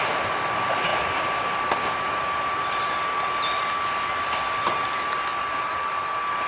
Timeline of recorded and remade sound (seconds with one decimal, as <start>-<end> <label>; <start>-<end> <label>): 0.0-6.5 recorded